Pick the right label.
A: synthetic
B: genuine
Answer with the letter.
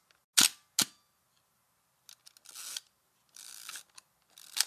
B